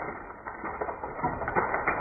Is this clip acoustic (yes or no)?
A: no